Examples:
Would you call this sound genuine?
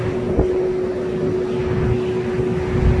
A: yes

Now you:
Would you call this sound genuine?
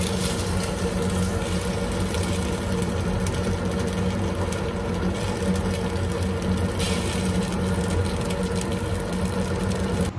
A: yes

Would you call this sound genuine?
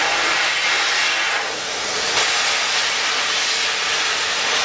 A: yes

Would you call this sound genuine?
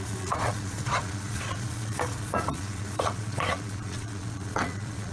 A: no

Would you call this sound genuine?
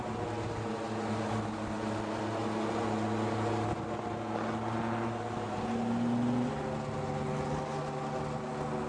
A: yes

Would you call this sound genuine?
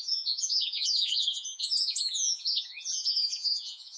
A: no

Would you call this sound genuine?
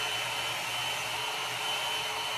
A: yes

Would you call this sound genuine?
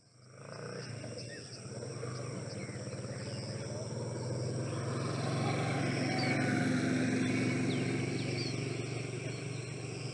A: yes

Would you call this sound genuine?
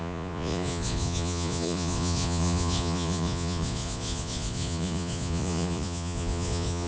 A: no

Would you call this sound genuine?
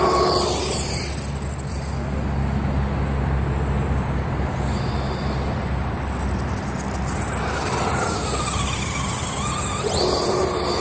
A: yes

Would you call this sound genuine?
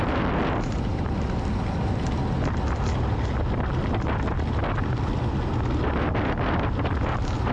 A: yes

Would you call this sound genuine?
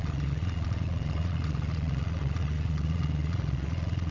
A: no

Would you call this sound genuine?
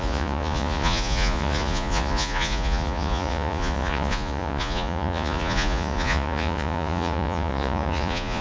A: no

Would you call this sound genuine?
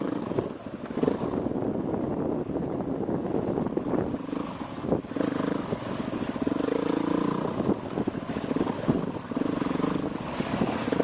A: yes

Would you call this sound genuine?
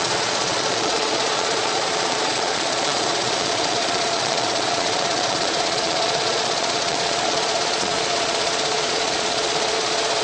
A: no